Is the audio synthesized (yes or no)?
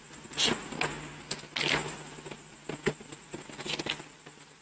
no